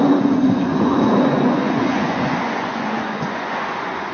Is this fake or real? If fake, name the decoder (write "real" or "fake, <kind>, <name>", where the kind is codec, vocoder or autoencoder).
fake, vocoder, Vocos